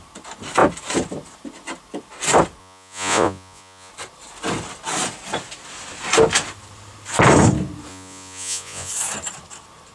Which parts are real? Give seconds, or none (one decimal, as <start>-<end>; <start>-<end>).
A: 0.0-2.6; 3.9-7.9; 8.9-9.9